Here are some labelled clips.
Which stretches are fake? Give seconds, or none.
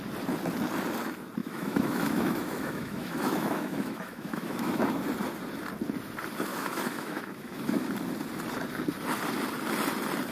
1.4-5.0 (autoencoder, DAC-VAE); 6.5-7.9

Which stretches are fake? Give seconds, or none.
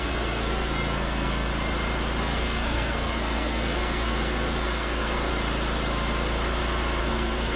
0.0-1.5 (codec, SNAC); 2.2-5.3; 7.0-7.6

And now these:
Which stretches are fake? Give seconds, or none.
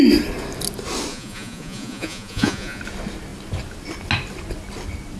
1.1-2.8 (vocoder, Vocos)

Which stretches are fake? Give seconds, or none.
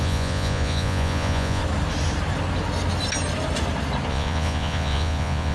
0.0-1.6 (vocoder, Vocos); 4.1-5.5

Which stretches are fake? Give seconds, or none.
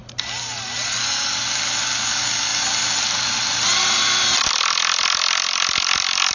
none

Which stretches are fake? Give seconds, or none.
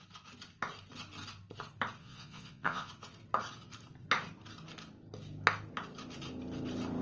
2.0-2.9 (vocoder, Vocos)